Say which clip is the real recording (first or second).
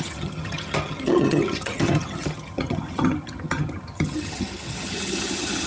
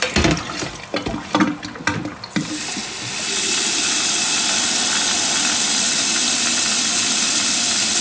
second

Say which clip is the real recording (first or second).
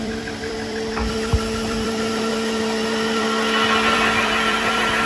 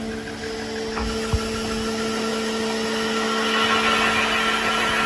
second